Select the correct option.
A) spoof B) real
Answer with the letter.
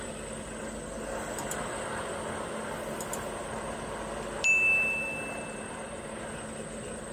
B